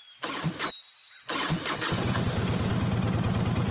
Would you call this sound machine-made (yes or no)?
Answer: no